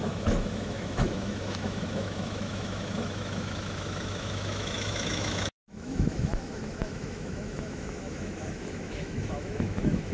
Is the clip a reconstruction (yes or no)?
yes